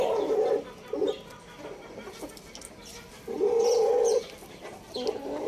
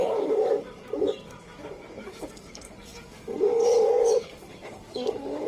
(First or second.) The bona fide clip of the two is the first